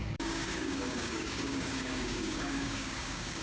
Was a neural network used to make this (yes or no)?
yes